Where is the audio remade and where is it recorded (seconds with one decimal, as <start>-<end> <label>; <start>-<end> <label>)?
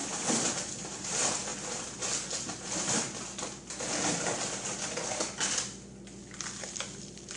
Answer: 0.0-7.4 recorded